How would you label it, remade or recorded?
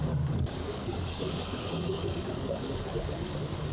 remade